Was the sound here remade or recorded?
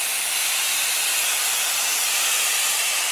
recorded